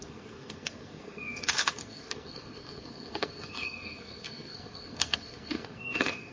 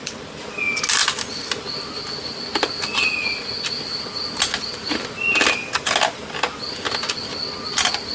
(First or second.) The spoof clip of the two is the first